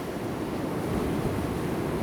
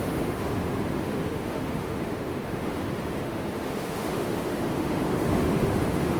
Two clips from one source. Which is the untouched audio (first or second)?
first